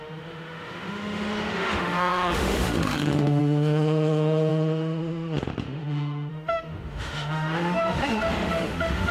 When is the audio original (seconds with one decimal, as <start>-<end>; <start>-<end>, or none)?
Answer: none

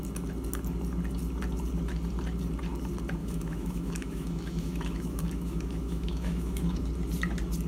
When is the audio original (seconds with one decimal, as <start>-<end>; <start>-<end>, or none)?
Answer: 0.0-3.2; 6.9-7.7

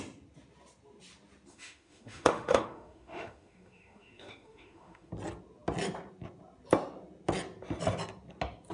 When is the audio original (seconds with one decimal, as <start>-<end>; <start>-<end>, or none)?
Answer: 0.0-1.5; 5.1-8.7

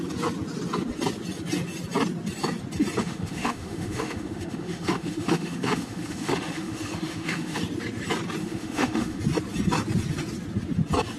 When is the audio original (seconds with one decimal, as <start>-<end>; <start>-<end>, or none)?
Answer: 0.0-3.0; 7.6-8.4; 9.2-11.2

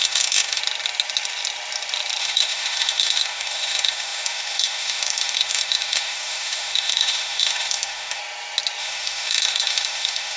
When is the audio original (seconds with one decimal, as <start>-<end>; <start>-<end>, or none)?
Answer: 0.6-2.2; 8.2-8.8